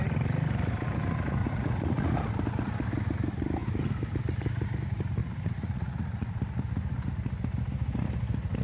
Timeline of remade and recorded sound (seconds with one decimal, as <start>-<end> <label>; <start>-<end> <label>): 0.0-1.4 recorded; 1.4-2.1 remade; 2.1-5.2 recorded; 5.2-6.4 remade; 6.4-8.6 recorded